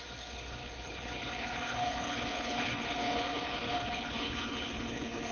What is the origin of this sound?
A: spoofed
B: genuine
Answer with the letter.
A